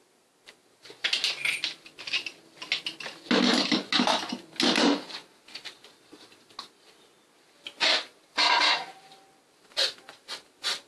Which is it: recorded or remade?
recorded